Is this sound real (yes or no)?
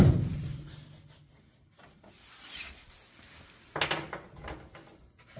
yes